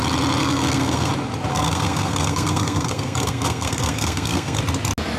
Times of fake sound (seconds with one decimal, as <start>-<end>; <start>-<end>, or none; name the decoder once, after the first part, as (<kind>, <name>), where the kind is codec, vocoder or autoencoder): 0.4-1.1 (codec, SNAC); 1.5-4.6